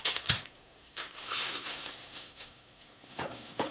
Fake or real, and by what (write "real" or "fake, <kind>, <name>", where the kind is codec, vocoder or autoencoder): fake, codec, SNAC